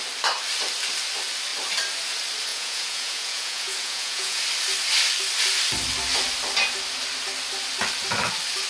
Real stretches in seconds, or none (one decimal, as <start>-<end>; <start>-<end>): 0.0-2.5; 4.4-8.7